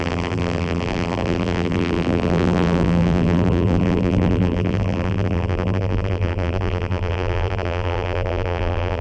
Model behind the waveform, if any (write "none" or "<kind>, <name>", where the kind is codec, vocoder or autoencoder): vocoder, BigVGAN v2